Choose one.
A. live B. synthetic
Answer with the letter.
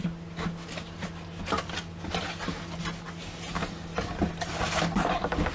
A